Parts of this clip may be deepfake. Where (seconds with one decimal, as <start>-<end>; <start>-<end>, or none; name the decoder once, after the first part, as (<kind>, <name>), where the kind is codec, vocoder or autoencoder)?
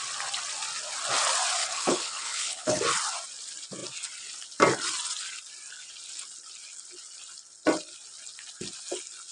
1.6-2.8 (codec, HILCodec)